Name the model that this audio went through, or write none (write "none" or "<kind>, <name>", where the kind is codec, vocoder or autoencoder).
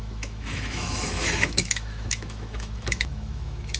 autoencoder, DAC-VAE